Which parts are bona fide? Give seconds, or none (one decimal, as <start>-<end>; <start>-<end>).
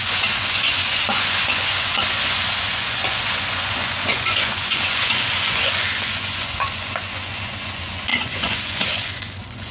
none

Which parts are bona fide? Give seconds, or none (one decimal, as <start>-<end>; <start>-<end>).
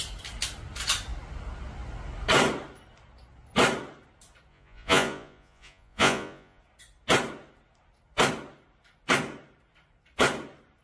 0.0-4.5; 6.6-10.8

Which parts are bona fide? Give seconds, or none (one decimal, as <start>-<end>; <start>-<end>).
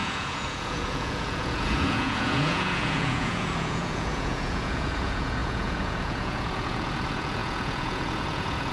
none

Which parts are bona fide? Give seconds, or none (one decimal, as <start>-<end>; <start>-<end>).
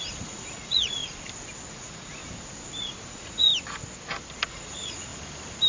1.0-1.7; 2.2-3.1; 3.5-4.5; 5.1-5.7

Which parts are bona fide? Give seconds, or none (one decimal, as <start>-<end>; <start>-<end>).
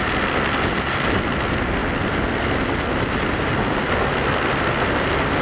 0.0-5.4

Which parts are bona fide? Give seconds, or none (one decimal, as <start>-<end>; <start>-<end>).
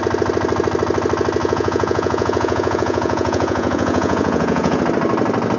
0.0-1.4; 4.8-5.6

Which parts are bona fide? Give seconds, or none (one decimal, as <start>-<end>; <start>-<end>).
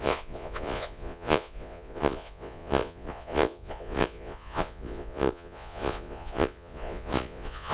none